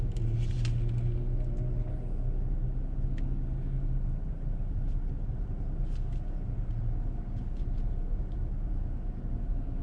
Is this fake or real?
real